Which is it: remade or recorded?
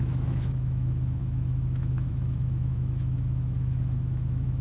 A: remade